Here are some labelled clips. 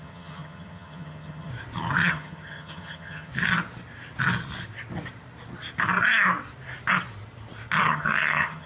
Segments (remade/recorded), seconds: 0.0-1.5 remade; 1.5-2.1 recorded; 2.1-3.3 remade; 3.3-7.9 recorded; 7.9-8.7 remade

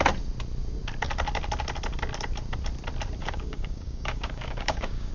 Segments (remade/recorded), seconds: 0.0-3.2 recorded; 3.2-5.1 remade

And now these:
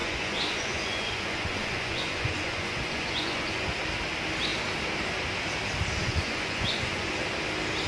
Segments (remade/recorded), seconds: 0.0-3.6 remade; 3.6-6.0 recorded; 6.0-7.1 remade; 7.1-7.9 recorded